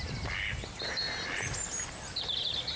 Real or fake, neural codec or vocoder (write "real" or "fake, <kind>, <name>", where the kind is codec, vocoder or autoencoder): real